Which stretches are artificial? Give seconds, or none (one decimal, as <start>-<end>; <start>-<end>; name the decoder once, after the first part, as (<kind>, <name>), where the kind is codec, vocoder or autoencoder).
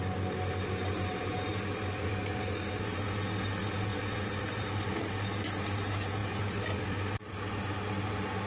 1.5-2.2 (vocoder, BigVGAN v2); 3.9-5.4; 6.2-7.2